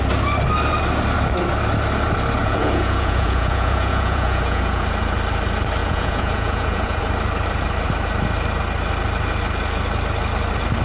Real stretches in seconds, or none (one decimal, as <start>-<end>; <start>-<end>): 0.0-2.4; 4.8-5.8; 7.0-10.8